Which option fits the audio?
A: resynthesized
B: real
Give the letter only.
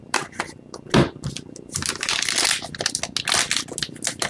B